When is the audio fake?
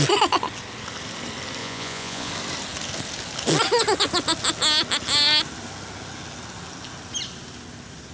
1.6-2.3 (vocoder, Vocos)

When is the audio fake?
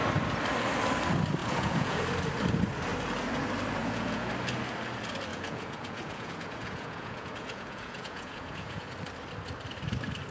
1.4-2.0 (vocoder, Vocos); 3.8-4.3; 5.3-8.9